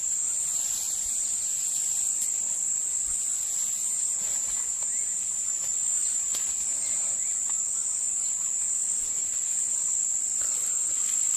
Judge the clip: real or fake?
real